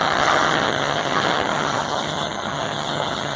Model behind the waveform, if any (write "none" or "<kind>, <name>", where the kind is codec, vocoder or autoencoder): vocoder, HiFi-GAN